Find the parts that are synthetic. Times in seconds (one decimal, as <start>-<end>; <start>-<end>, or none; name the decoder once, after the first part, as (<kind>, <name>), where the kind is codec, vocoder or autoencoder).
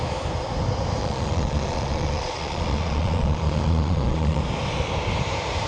1.0-4.4 (vocoder, Vocos)